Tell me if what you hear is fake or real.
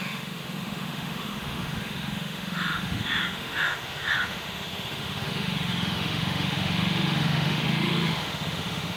fake